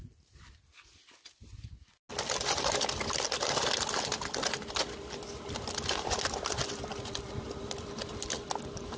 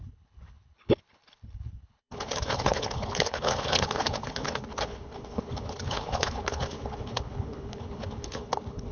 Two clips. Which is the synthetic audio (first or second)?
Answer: second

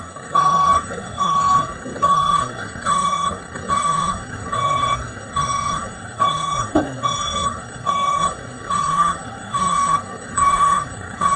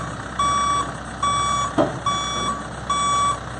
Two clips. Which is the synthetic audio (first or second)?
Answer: first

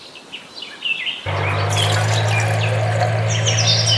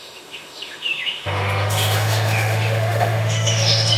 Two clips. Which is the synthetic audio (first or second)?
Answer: second